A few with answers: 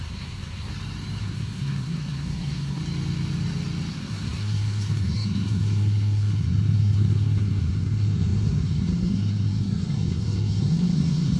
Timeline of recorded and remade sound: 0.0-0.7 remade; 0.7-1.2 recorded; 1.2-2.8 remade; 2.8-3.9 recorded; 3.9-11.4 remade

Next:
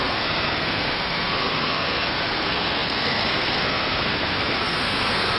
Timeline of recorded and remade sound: 0.0-5.4 remade